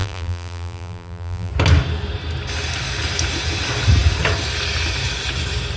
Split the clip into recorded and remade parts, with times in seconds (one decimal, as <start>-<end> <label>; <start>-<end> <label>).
0.0-1.5 remade; 1.5-5.8 recorded